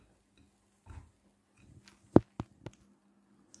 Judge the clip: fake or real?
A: real